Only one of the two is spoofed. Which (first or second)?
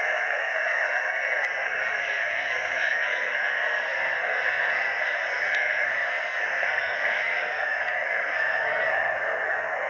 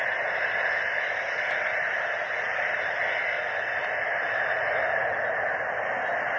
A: first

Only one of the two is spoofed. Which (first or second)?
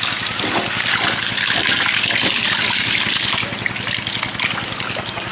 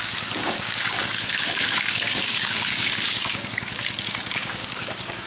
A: second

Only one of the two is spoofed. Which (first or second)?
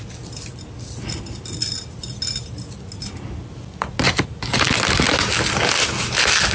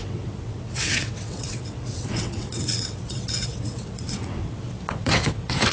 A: second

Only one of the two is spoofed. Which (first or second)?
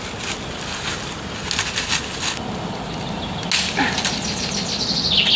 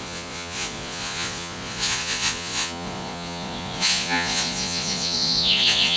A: second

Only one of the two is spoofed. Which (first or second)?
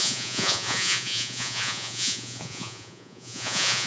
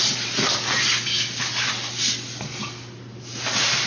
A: first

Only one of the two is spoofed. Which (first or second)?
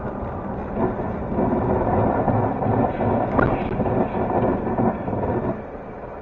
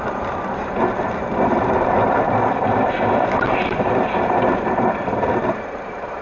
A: second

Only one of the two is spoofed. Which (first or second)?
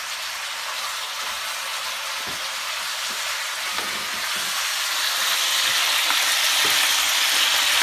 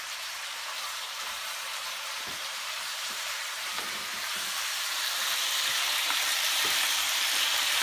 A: second